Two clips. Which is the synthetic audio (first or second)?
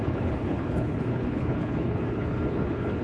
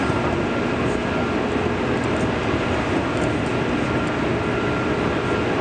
first